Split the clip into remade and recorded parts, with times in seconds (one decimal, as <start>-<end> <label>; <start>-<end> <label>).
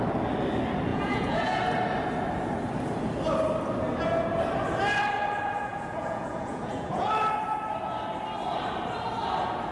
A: 0.0-0.9 recorded; 0.9-1.6 remade; 1.6-5.7 recorded; 5.7-7.1 remade; 7.1-9.7 recorded